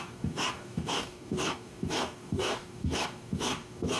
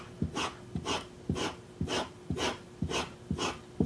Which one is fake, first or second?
first